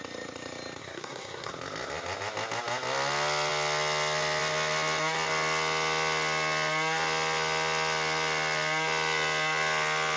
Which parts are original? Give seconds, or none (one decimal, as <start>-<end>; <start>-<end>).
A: 0.0-0.8; 1.5-10.2